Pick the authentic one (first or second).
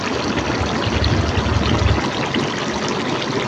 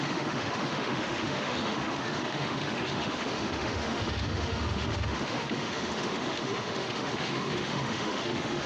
first